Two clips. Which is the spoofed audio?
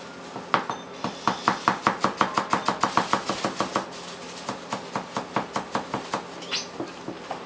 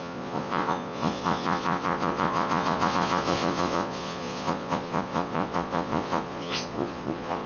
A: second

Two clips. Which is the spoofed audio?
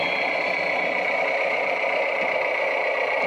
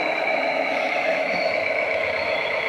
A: second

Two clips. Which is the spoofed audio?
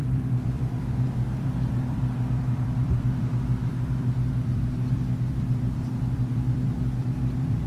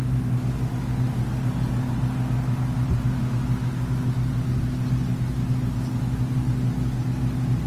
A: first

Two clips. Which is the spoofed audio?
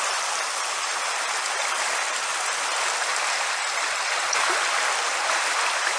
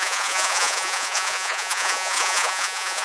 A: second